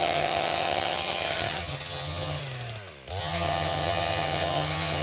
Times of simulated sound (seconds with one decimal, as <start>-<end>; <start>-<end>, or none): 0.0-2.4; 3.2-5.0